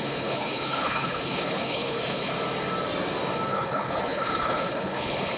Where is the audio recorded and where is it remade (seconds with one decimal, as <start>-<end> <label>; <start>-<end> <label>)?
0.0-2.3 remade; 2.3-3.5 recorded; 3.5-5.4 remade